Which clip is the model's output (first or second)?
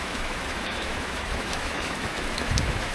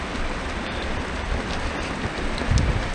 first